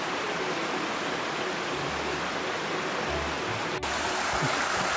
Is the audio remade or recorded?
recorded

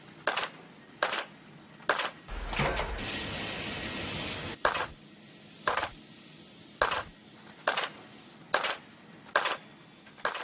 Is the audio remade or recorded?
recorded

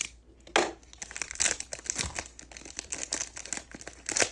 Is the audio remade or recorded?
recorded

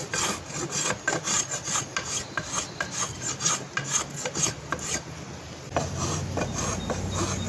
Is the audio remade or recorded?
recorded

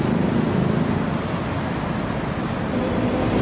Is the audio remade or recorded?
recorded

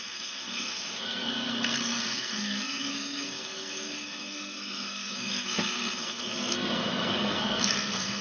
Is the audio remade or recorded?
remade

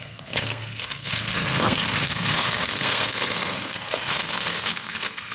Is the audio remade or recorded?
remade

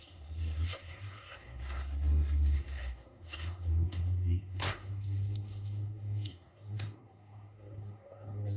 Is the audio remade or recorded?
remade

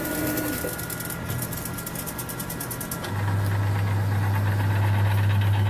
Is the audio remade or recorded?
recorded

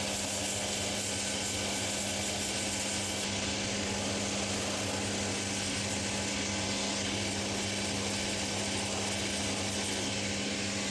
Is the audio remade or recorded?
recorded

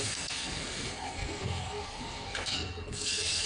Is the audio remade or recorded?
remade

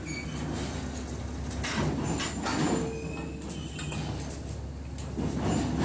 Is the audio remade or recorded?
recorded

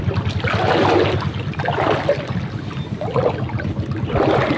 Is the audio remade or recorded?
recorded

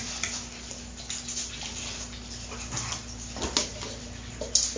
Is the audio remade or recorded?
recorded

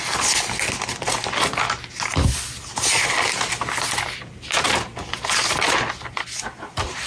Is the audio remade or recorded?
recorded